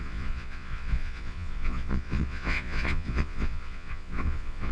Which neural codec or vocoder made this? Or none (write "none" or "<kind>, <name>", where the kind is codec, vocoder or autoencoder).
vocoder, Vocos